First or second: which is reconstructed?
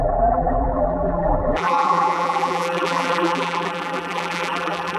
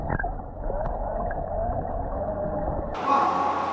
first